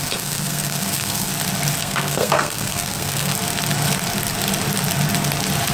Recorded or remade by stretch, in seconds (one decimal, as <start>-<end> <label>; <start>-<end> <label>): 0.0-1.3 remade; 1.3-1.8 recorded; 1.8-3.3 remade; 3.3-5.7 recorded

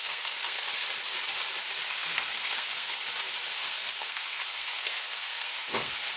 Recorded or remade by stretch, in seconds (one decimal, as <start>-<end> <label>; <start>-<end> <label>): 0.0-0.8 remade; 0.8-1.9 recorded; 1.9-3.0 remade; 3.0-3.5 recorded; 3.5-6.2 remade